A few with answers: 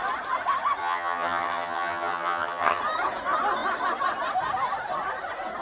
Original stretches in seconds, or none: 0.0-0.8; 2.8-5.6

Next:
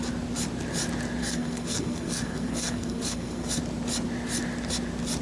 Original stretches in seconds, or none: 0.0-1.2; 3.6-5.2

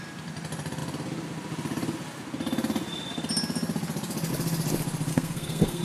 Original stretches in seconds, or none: 0.0-5.1